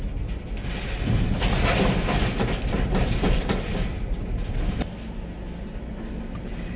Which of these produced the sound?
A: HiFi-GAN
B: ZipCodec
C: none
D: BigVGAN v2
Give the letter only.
C